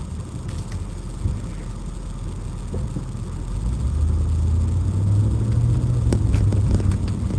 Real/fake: real